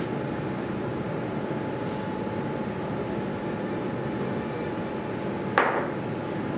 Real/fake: real